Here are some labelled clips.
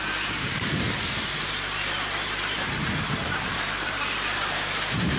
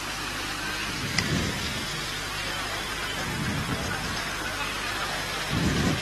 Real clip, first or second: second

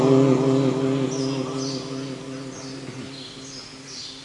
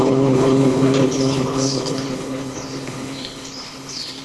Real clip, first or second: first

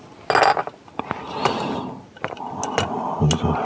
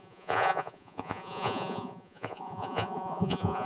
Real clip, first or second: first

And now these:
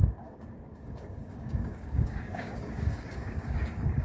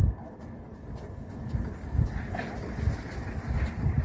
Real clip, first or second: second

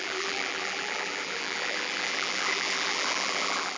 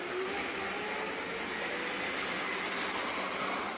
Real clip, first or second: second